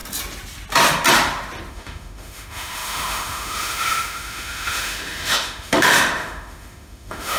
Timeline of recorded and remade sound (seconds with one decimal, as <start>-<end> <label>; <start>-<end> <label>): 0.0-1.7 recorded; 1.7-7.4 remade